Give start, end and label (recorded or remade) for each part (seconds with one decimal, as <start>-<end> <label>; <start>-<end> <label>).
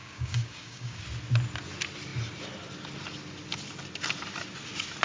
0.0-1.0 remade; 1.0-5.0 recorded